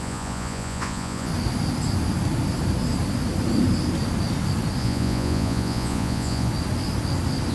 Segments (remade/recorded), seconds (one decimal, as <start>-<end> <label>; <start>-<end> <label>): 0.0-1.3 remade; 1.3-4.8 recorded; 4.8-6.5 remade; 6.5-7.5 recorded